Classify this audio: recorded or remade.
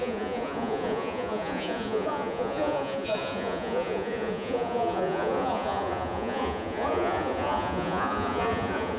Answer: remade